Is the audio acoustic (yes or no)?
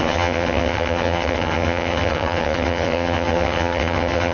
no